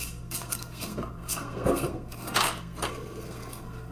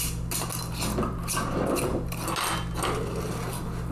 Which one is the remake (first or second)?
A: first